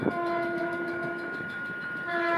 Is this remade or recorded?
remade